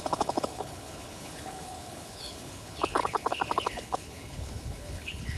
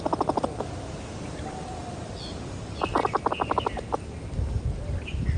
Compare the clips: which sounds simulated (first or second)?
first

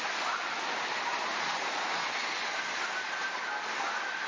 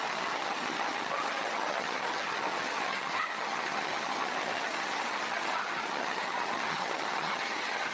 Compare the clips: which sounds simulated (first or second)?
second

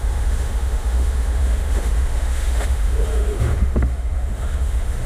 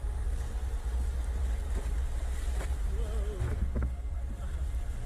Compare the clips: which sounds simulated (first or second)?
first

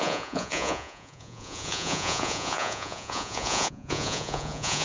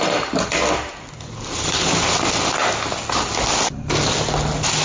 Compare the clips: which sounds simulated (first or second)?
first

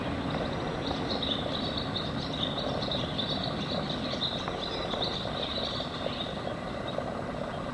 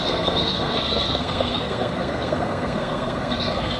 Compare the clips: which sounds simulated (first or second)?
second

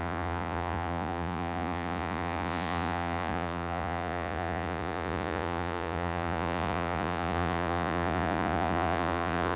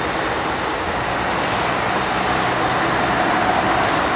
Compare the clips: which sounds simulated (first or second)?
first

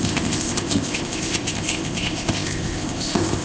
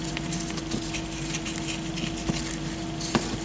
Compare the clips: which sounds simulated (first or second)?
first